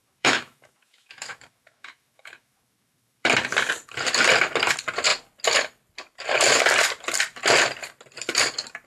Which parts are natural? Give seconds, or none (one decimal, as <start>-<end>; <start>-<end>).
3.3-8.9